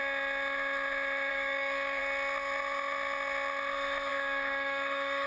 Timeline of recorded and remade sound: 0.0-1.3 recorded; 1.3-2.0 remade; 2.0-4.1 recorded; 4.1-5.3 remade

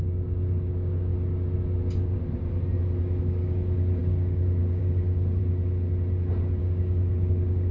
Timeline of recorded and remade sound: 0.0-1.1 remade; 1.1-3.2 recorded; 3.2-5.4 remade; 5.4-6.6 recorded; 6.6-7.7 remade

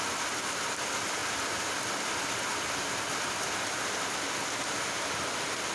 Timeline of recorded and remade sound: 0.0-5.7 recorded

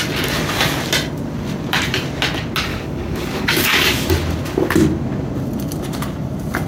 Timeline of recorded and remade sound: 0.0-2.7 recorded; 2.7-4.1 remade; 4.1-6.7 recorded

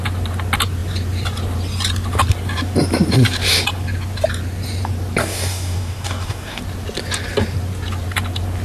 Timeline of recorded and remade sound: 0.0-5.2 recorded; 5.2-6.6 remade; 6.6-8.6 recorded

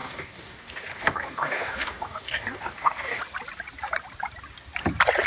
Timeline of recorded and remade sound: 0.0-3.2 remade; 3.2-5.3 recorded

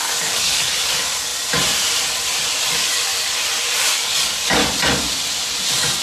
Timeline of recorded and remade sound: 0.0-1.3 remade; 1.3-2.7 recorded; 2.7-3.1 remade; 3.1-3.8 recorded; 3.8-4.6 remade; 4.6-6.0 recorded